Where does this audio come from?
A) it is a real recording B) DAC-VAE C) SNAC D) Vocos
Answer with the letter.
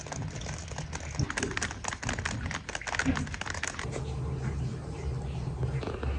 A